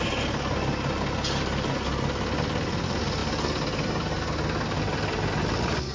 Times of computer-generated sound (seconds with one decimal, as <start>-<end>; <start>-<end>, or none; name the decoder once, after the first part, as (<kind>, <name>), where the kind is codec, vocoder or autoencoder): none